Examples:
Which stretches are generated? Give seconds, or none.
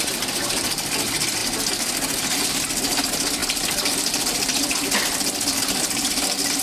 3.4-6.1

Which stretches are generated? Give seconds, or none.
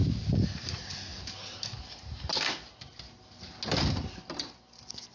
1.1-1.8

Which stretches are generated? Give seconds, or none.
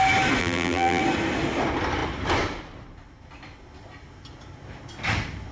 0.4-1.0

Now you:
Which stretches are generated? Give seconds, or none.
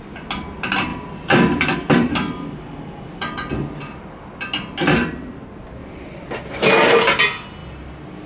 0.9-4.0; 5.8-6.7; 7.6-8.3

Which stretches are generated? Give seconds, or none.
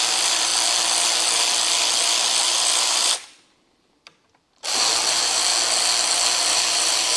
0.0-0.5; 2.4-5.5; 6.4-7.2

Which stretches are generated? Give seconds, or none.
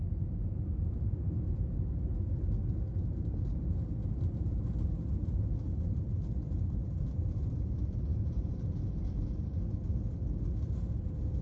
5.2-7.2; 8.1-9.3